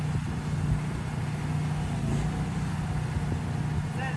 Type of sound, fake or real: real